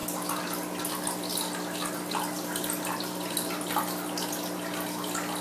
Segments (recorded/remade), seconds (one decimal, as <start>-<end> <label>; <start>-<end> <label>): 0.0-5.4 recorded